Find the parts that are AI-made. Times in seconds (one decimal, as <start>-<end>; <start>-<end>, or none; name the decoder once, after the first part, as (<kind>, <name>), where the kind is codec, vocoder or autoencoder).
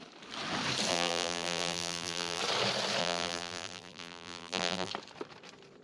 0.9-2.4 (vocoder, BigVGAN v2); 3.0-4.9